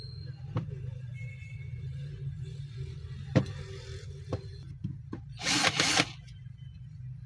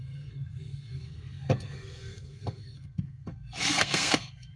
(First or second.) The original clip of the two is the first